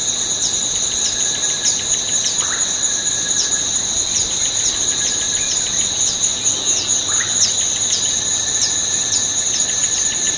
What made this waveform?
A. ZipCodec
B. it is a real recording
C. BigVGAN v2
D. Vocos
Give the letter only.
B